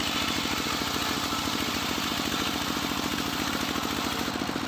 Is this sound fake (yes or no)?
no